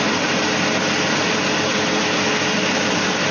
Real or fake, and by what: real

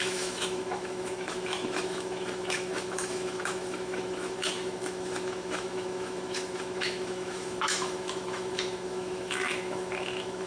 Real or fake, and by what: fake, autoencoder, DAC-VAE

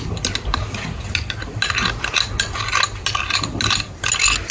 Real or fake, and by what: real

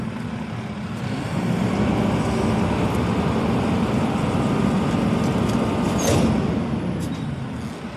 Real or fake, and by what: real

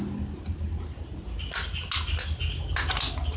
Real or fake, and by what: real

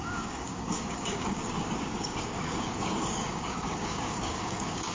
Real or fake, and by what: fake, codec, DAC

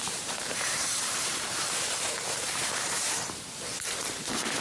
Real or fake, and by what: fake, vocoder, BigVGAN v2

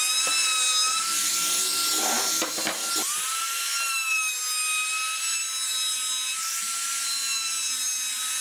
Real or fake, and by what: real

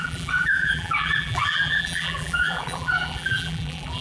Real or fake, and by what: fake, vocoder, BigVGAN v2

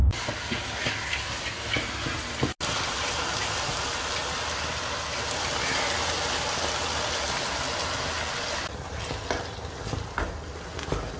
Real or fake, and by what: real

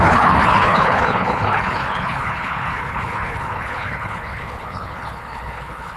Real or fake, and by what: fake, codec, HILCodec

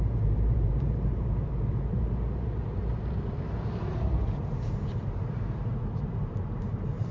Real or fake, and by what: fake, vocoder, BigVGAN v2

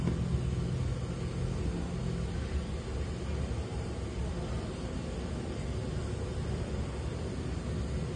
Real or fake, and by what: real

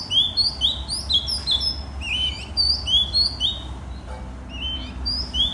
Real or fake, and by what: real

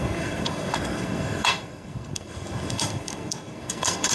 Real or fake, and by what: fake, codec, SNAC